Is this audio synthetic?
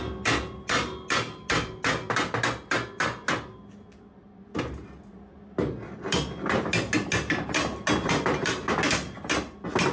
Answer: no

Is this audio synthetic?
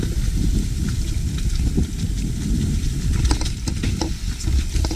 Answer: no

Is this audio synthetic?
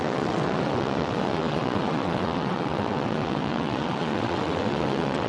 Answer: yes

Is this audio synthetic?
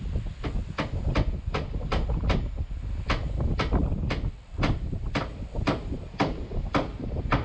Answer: no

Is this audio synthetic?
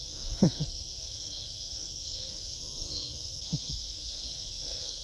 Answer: yes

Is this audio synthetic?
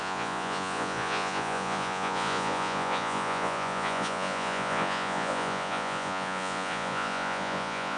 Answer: yes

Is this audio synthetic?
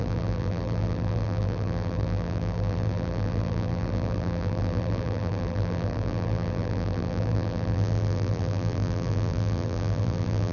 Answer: yes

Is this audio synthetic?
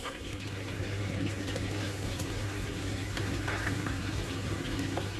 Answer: yes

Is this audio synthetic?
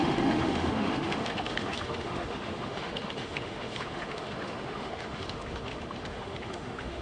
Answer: yes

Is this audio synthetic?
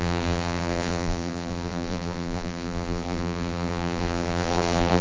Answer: yes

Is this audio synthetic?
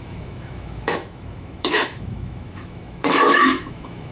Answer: yes